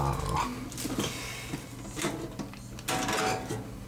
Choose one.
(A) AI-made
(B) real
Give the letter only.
B